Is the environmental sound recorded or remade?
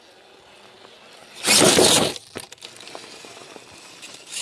recorded